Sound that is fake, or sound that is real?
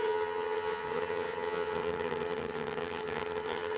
fake